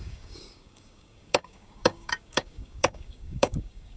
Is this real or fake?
fake